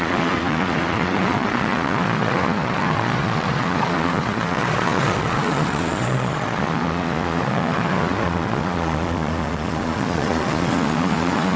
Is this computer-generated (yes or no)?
yes